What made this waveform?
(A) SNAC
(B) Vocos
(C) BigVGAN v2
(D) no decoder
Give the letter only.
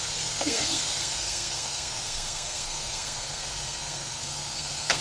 A